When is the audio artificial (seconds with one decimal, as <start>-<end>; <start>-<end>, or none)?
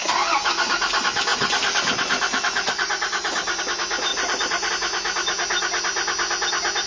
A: 1.3-3.6; 4.1-4.7